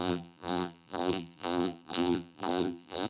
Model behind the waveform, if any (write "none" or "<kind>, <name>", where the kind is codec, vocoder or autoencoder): vocoder, BigVGAN v2